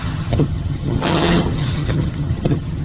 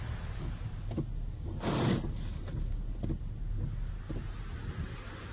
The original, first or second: second